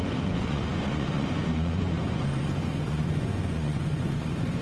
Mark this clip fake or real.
fake